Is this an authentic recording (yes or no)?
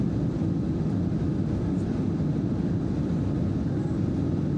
yes